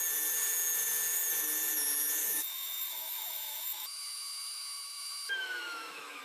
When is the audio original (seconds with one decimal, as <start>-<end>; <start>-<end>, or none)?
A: 0.0-2.2